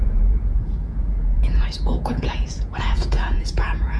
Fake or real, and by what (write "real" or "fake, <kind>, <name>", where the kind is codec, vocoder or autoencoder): fake, vocoder, Vocos